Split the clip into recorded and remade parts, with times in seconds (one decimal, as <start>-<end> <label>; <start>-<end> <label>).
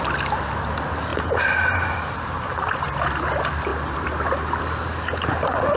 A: 0.0-1.1 recorded; 1.1-2.5 remade; 2.5-3.7 recorded; 3.7-4.6 remade; 4.6-5.8 recorded